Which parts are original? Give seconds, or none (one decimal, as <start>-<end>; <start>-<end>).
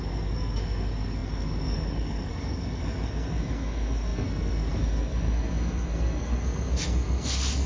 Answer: none